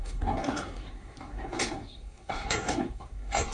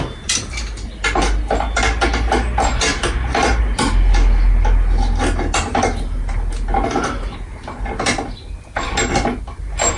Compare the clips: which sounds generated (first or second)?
first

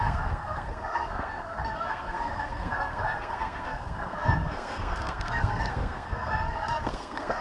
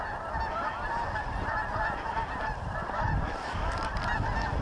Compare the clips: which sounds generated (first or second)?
first